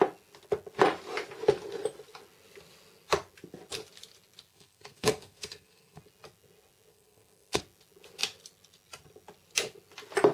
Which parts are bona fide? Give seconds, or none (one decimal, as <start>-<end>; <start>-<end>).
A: 0.0-4.5; 6.0-6.9; 7.6-10.3